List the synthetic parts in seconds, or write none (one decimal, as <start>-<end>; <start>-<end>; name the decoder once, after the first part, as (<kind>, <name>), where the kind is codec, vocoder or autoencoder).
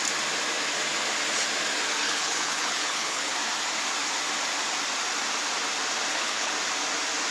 2.0-3.3 (codec, HILCodec); 6.1-6.5